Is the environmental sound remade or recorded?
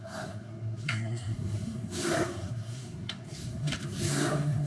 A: remade